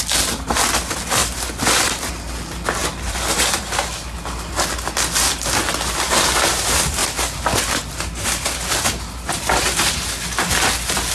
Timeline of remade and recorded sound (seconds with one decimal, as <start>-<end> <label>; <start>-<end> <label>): 0.0-1.2 recorded; 1.2-2.1 remade; 2.1-11.1 recorded